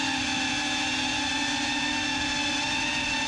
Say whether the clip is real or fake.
real